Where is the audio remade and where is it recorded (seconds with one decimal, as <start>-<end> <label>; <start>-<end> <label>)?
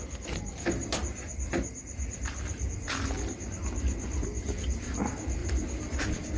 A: 0.0-6.4 recorded